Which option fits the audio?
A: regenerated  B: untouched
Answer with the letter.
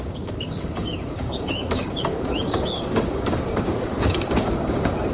A